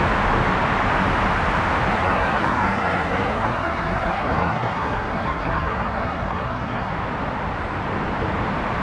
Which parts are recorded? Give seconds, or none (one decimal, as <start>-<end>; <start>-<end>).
0.0-1.9; 6.9-8.8